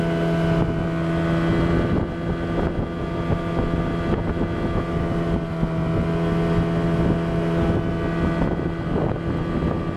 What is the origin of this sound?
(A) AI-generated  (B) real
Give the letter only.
B